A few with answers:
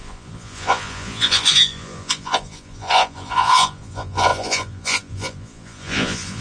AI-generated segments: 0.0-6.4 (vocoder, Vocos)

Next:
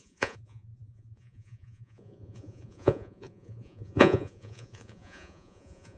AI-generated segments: 0.0-6.0 (vocoder, Vocos)

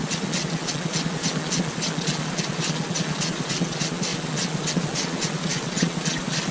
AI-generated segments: 0.0-6.5 (vocoder, Vocos)

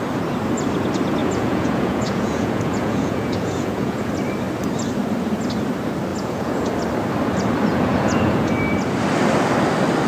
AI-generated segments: 1.2-4.1 (vocoder, Vocos); 6.1-6.7; 7.7-8.5